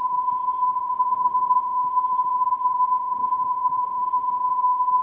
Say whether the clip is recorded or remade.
remade